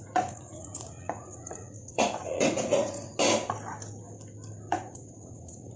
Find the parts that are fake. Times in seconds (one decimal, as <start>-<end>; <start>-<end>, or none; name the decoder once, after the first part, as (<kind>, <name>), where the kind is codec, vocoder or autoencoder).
0.0-3.1 (vocoder, Vocos); 4.7-5.8